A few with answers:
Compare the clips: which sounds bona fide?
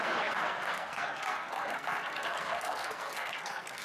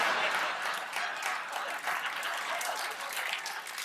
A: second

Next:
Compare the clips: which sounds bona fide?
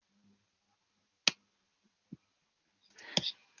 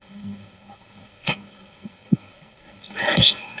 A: first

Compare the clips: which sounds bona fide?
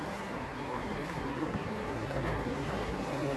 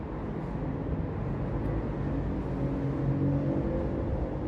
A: second